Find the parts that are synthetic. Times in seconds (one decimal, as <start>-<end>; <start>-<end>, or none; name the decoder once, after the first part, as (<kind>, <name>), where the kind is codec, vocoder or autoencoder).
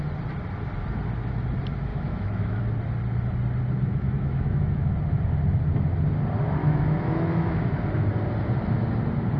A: 1.9-2.6 (autoencoder, DAC-VAE); 3.9-4.9; 6.6-7.6